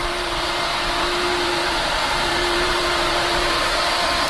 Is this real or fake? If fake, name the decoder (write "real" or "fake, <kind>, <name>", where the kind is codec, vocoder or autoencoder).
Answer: fake, vocoder, BigVGAN v2